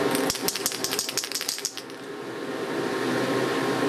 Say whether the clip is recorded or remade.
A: recorded